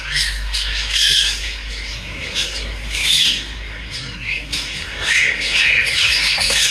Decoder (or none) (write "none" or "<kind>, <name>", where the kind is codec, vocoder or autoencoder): codec, SNAC